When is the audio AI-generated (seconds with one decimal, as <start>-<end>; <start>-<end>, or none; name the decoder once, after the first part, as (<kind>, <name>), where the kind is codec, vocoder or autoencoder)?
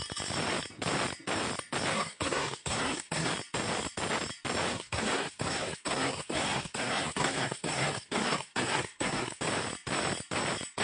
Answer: 1.9-3.3 (codec, SNAC); 4.7-9.4